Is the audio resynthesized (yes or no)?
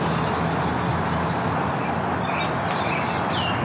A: no